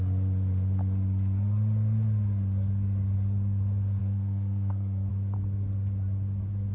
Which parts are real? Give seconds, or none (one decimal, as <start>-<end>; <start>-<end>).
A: 0.0-4.0; 5.1-6.7